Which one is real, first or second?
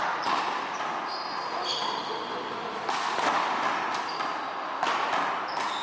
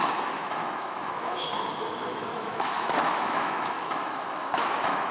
first